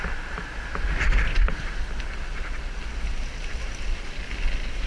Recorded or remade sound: recorded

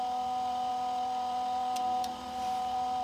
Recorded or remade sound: remade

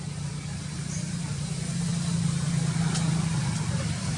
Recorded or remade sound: recorded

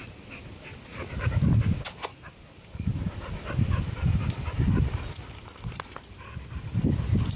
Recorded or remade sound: remade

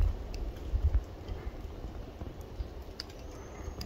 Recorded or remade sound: recorded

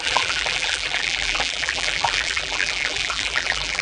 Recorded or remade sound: remade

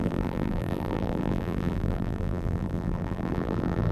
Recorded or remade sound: remade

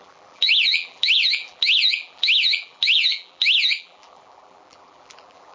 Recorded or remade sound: remade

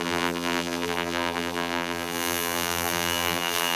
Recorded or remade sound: remade